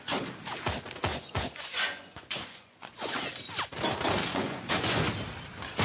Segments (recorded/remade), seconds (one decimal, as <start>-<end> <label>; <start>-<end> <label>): 0.0-1.1 recorded; 1.1-3.2 remade; 3.2-4.3 recorded; 4.3-5.1 remade; 5.1-5.8 recorded